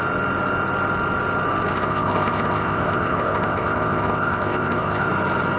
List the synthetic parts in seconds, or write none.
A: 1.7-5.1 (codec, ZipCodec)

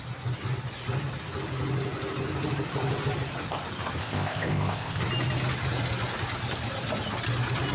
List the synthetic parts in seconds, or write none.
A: 4.0-5.0 (codec, ZipCodec)

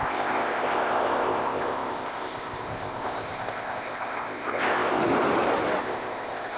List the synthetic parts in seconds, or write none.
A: 0.0-5.0 (codec, ZipCodec); 5.8-6.6